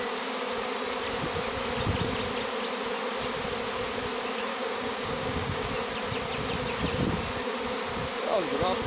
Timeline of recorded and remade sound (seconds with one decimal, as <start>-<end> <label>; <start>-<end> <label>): 0.0-4.5 recorded; 4.5-5.7 remade; 5.7-8.9 recorded